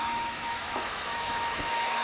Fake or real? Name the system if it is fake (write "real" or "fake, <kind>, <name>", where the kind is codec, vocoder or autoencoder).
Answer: fake, autoencoder, DAC-VAE